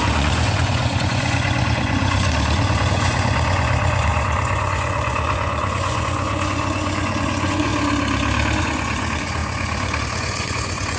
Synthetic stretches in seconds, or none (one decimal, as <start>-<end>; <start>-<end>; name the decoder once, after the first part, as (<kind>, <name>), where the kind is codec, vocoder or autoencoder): 0.0-7.7 (vocoder, Vocos); 8.6-11.0